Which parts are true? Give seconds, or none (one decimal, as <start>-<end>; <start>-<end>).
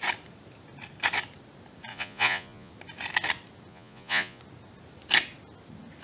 0.0-1.9; 2.7-3.7; 4.4-6.0